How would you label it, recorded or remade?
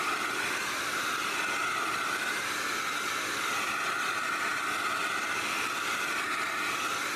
recorded